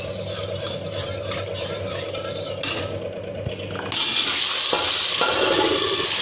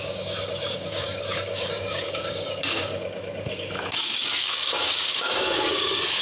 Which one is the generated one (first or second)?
second